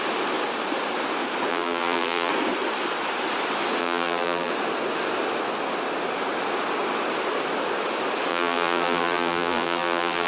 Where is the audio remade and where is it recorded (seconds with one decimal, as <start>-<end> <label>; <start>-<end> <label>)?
0.0-1.5 recorded; 1.5-2.3 remade; 2.3-3.8 recorded; 3.8-4.5 remade; 4.5-8.3 recorded; 8.3-10.3 remade